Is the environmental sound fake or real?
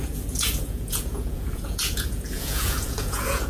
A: fake